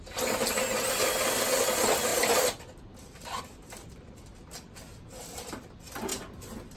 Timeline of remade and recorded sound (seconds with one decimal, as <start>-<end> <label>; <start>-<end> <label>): 0.0-6.8 recorded